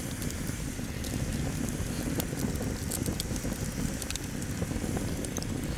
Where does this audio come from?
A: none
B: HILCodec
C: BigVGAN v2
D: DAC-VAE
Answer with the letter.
A